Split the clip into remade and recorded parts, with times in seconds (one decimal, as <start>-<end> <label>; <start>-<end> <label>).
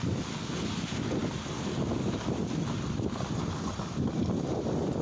0.0-5.0 recorded